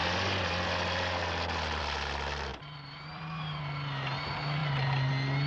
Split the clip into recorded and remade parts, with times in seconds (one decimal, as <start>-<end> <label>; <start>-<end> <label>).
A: 0.0-2.5 recorded; 2.5-3.6 remade; 3.6-4.6 recorded; 4.6-5.1 remade; 5.1-5.5 recorded